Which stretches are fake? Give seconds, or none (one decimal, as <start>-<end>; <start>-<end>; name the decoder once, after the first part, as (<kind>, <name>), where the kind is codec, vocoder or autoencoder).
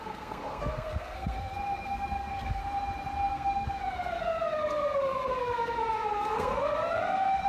0.0-2.6 (codec, SNAC); 3.3-7.5